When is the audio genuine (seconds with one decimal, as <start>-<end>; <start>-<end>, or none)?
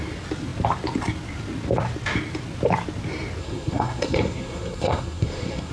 0.0-3.4